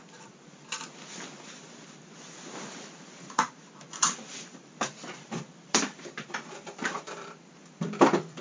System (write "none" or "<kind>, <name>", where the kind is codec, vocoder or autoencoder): vocoder, BigVGAN v2